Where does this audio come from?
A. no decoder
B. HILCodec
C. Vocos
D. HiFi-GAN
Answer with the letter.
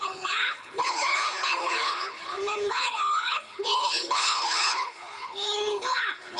B